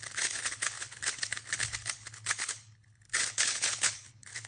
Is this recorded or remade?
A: remade